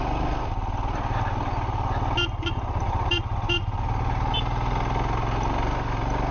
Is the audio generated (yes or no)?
no